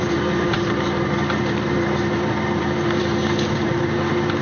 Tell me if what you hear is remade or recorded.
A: remade